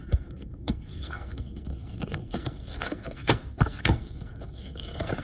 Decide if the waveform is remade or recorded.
remade